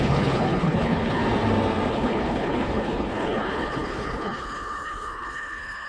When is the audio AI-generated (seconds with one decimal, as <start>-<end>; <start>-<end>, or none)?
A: 0.0-1.2; 1.9-5.9